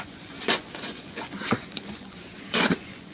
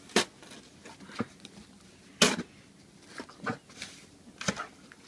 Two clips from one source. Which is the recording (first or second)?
second